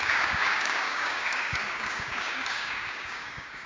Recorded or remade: remade